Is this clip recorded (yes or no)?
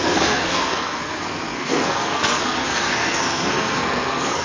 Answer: no